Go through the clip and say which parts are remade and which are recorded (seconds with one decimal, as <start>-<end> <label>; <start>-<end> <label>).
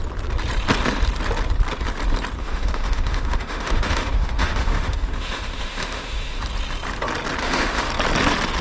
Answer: 0.0-2.4 recorded; 2.4-6.4 remade; 6.4-7.4 recorded; 7.4-7.9 remade; 7.9-8.6 recorded